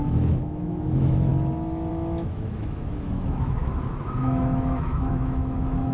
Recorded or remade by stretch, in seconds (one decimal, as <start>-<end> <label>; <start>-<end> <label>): 0.0-1.3 remade; 1.3-1.9 recorded; 1.9-5.9 remade